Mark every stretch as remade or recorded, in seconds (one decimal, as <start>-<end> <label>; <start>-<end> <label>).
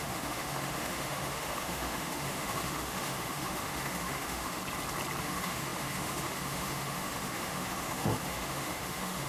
0.0-4.6 remade; 4.6-5.2 recorded; 5.2-9.3 remade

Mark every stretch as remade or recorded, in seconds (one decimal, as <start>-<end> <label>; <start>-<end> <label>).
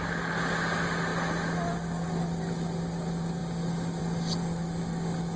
0.0-4.4 recorded; 4.4-5.4 remade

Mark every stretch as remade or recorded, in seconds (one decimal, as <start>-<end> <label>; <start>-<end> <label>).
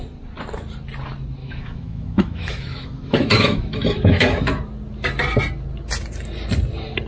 0.0-1.4 recorded; 1.4-4.5 remade; 4.5-7.1 recorded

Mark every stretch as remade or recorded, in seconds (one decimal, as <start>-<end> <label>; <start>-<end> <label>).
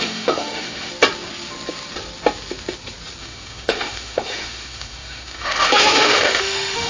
0.0-0.9 remade; 0.9-3.2 recorded; 3.2-6.9 remade